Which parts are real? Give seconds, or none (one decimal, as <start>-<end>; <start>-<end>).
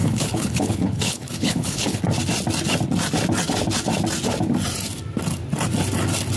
2.0-6.4